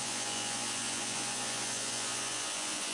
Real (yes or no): no